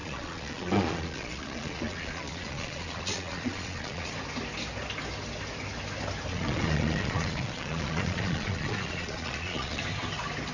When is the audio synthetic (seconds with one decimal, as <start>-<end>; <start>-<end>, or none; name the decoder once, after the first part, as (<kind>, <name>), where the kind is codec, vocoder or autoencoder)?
0.0-4.1 (vocoder, Vocos); 6.3-9.8